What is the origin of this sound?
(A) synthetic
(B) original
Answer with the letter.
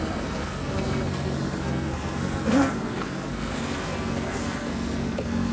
A